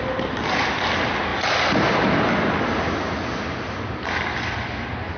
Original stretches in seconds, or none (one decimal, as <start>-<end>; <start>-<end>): 0.0-5.2